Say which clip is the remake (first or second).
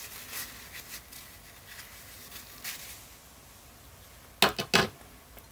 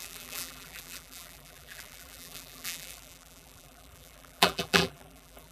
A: second